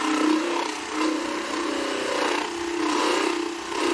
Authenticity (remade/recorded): recorded